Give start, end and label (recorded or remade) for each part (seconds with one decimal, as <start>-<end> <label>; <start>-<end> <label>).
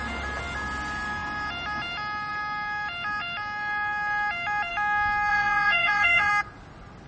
0.0-5.3 recorded; 5.3-6.3 remade; 6.3-7.1 recorded